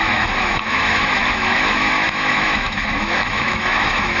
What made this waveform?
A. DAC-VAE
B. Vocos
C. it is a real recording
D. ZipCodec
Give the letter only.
A